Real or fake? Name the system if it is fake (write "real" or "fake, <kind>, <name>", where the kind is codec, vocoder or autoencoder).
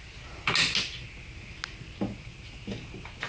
real